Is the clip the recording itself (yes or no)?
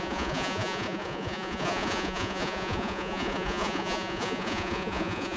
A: no